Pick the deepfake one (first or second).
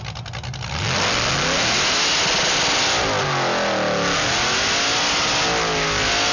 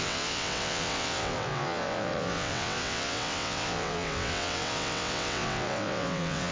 second